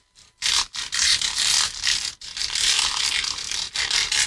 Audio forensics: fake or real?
real